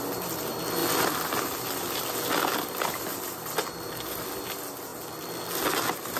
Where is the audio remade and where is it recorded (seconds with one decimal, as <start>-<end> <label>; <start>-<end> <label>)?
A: 0.0-6.2 recorded